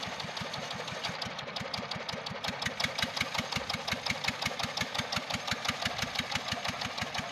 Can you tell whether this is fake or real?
real